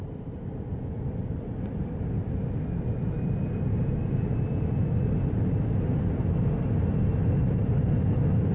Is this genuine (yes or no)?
yes